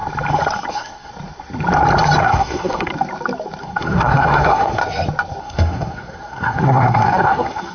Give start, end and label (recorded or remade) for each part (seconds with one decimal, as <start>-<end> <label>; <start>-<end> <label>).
0.0-0.7 recorded; 0.7-1.1 remade; 1.1-2.2 recorded; 2.2-2.9 remade; 2.9-3.6 recorded; 3.6-4.8 remade; 4.8-5.4 recorded; 5.4-7.7 remade